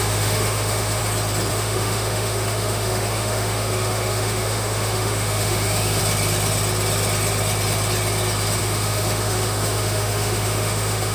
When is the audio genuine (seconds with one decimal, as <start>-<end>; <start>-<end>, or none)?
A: 1.0-1.5; 6.0-8.6